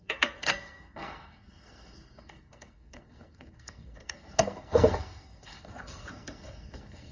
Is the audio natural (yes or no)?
no